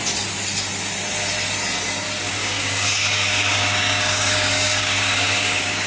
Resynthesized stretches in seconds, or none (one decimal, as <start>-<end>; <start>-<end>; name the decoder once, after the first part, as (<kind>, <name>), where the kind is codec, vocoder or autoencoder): 2.4-5.9 (codec, DAC)